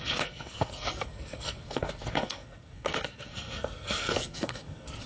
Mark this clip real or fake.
fake